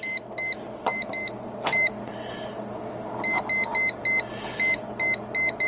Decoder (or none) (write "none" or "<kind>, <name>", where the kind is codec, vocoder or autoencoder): none